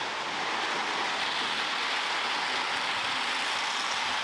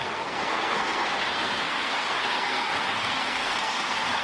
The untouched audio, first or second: first